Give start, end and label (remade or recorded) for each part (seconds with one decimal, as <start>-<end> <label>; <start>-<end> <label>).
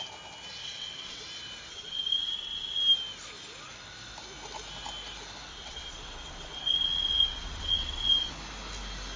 0.0-0.6 recorded; 0.6-1.2 remade; 1.2-1.7 recorded; 1.7-2.8 remade; 2.8-5.5 recorded; 5.5-8.3 remade; 8.3-9.2 recorded